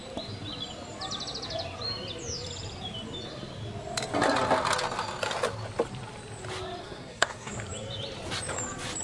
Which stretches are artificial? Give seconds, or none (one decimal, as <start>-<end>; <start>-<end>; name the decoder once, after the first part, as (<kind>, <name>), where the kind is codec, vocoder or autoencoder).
6.8-7.5 (codec, SNAC)